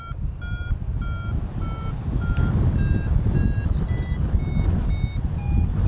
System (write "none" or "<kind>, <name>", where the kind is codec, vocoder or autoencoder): none